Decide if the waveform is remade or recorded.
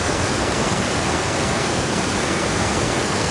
remade